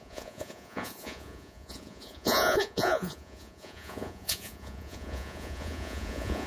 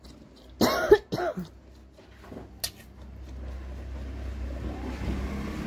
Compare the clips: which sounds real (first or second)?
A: second